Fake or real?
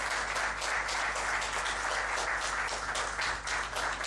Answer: real